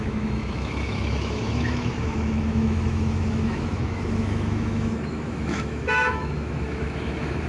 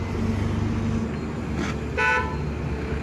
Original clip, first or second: second